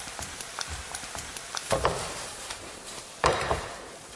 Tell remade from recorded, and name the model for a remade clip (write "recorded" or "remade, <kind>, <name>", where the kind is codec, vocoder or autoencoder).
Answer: remade, vocoder, BigVGAN v2